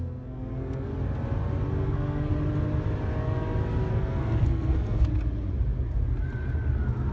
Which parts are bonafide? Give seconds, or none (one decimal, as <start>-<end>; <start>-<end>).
0.9-1.7; 2.3-3.9; 5.1-7.1